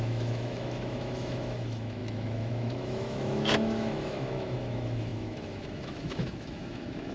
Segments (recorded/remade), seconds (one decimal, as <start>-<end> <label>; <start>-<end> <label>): 0.0-7.1 remade